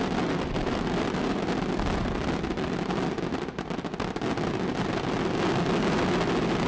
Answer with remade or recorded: recorded